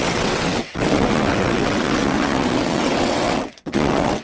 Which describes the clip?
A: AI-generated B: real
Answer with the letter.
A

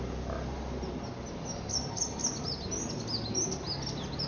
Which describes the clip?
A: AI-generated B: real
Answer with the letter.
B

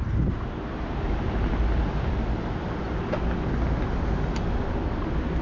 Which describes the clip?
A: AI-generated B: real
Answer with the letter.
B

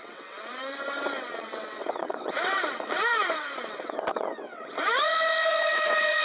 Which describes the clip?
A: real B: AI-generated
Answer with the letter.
B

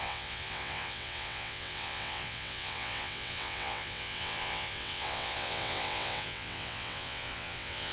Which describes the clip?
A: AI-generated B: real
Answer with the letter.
A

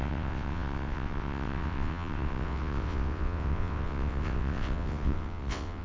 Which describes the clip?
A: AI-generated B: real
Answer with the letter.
A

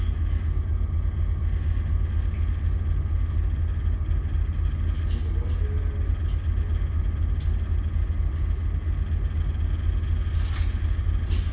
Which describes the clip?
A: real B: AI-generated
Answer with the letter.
A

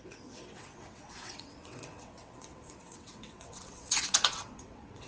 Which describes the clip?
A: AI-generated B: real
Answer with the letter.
A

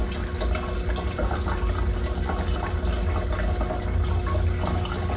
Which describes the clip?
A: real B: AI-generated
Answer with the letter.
A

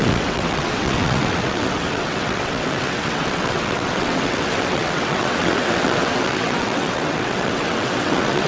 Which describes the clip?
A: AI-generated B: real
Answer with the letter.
A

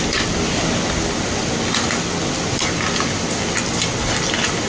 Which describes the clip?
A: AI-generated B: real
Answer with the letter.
B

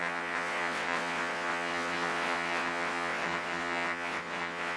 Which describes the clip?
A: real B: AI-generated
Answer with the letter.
B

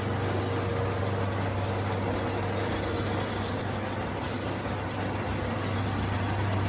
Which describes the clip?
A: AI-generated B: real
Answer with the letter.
B